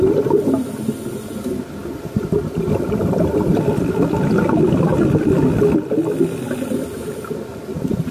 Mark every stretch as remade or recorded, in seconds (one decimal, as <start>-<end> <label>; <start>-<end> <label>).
0.0-8.1 recorded